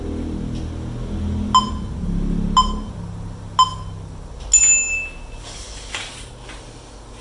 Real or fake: real